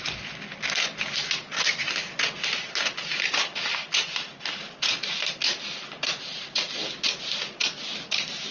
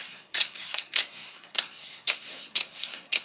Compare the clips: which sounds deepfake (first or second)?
second